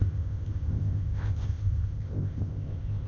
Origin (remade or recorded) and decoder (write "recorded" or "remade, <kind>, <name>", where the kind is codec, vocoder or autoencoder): remade, codec, ZipCodec